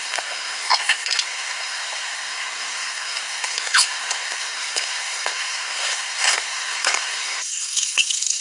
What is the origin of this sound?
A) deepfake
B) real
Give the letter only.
A